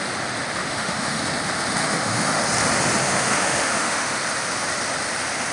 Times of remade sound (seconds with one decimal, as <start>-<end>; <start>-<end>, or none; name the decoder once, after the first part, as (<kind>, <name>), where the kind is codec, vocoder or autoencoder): 0.6-1.2 (autoencoder, DAC-VAE); 1.8-2.4; 3.0-4.2